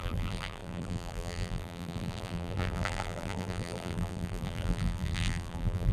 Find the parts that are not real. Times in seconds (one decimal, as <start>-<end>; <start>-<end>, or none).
0.0-5.9